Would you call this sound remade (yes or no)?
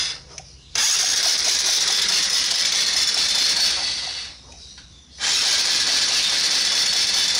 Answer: yes